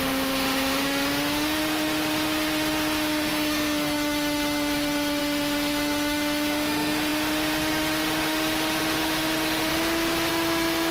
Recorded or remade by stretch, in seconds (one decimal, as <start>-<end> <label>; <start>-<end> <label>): 0.0-9.7 remade; 9.7-10.3 recorded; 10.3-10.9 remade